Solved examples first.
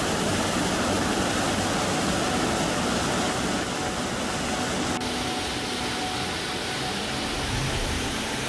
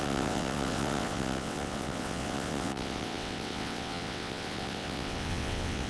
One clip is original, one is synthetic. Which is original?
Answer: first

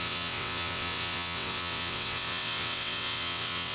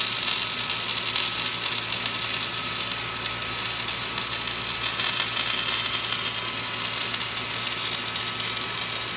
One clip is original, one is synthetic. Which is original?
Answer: second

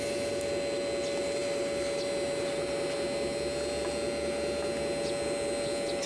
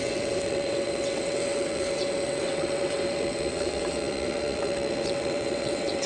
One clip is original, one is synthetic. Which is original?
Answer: first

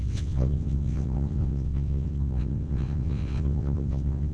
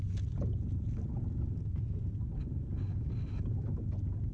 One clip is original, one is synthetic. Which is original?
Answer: second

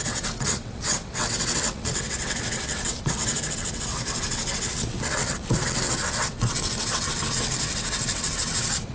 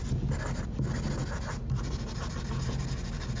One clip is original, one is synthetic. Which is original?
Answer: second